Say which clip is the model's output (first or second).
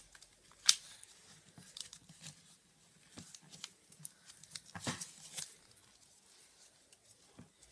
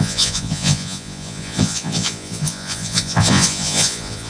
second